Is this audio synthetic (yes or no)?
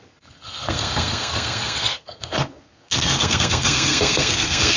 yes